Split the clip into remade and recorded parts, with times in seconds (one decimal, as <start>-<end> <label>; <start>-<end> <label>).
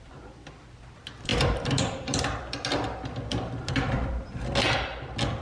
0.0-5.4 recorded